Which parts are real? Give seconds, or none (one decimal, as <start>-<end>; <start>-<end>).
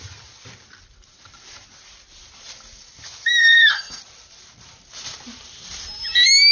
0.0-3.4; 4.0-6.5